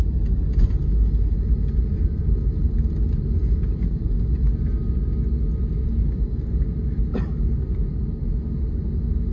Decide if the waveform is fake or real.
real